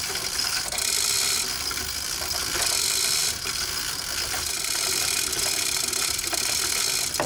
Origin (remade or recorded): recorded